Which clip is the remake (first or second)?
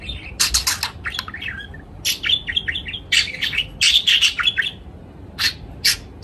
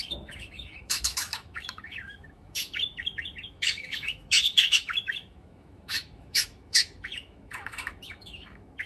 second